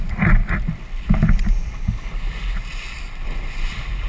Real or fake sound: fake